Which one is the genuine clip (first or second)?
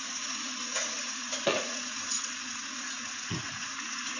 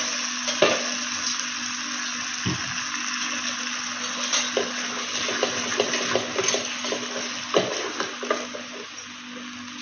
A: second